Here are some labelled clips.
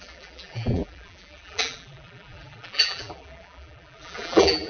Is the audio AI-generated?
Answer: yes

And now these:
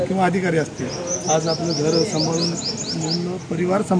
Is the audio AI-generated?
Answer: no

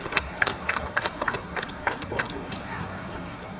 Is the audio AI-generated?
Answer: yes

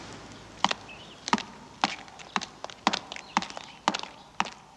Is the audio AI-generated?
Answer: no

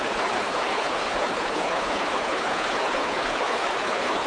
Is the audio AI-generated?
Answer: yes